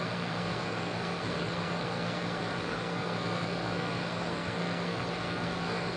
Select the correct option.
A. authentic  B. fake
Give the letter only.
B